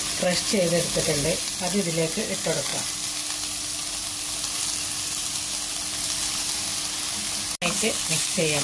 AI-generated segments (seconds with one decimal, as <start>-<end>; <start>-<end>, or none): none